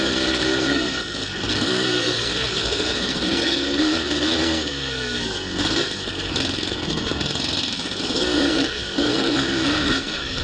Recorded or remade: remade